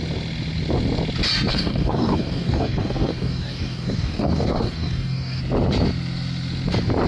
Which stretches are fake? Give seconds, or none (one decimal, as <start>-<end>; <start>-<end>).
1.5-5.4